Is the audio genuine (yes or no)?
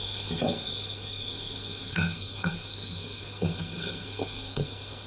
no